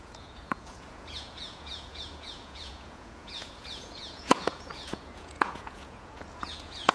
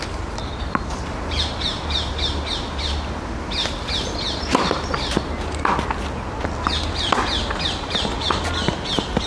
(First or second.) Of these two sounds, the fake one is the first